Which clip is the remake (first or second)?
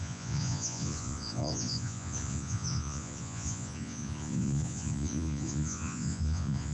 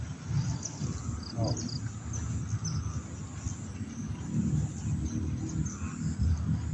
first